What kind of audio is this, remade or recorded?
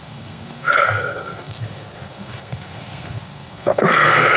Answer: remade